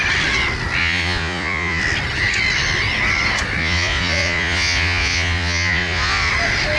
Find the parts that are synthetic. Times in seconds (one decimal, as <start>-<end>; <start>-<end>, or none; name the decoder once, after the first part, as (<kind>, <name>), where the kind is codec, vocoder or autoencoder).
0.8-1.8 (vocoder, Vocos); 3.6-6.3